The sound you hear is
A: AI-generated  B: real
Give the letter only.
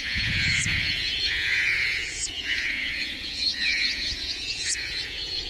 A